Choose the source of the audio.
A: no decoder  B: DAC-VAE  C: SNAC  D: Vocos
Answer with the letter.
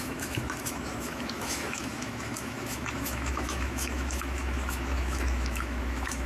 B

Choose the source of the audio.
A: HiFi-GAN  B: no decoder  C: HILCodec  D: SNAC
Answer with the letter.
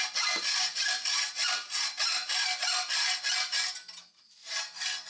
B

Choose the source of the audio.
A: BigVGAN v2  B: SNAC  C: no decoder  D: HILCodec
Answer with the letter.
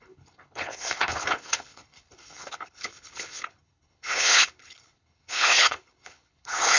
D